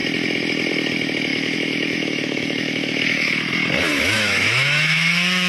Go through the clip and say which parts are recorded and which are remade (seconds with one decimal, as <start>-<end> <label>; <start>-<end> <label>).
0.0-1.3 recorded; 1.3-3.5 remade; 3.5-3.9 recorded; 3.9-5.5 remade